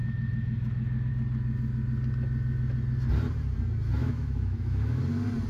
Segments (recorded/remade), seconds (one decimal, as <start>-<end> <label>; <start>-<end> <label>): 0.0-4.0 recorded; 4.0-5.0 remade; 5.0-5.5 recorded